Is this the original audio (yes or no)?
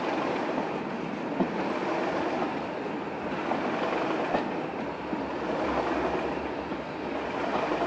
yes